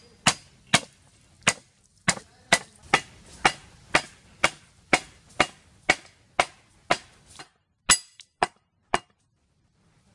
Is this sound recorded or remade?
recorded